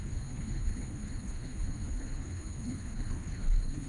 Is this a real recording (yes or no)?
no